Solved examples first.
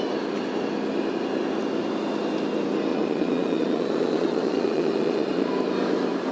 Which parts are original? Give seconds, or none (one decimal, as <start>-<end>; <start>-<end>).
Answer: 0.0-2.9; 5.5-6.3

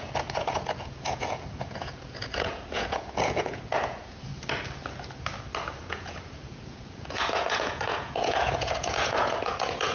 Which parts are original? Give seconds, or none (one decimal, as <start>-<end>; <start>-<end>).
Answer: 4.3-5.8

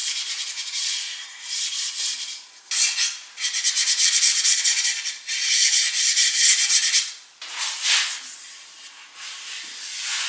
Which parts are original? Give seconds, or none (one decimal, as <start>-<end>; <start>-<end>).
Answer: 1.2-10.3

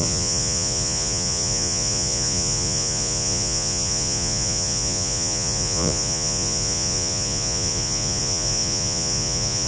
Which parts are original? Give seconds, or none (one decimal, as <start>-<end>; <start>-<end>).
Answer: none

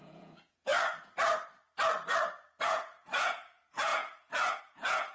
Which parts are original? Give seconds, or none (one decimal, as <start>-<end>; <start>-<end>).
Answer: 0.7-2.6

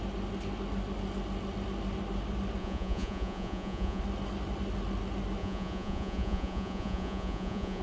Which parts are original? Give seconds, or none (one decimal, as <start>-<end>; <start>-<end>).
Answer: 0.0-2.6; 4.0-5.4

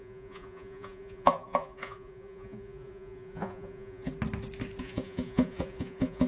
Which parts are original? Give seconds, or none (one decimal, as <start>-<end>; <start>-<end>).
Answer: 4.1-4.8

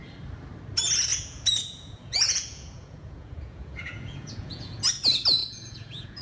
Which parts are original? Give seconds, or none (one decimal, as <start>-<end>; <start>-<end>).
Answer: 0.0-1.1; 4.8-5.4